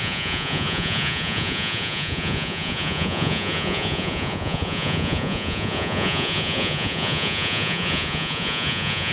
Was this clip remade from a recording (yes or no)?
yes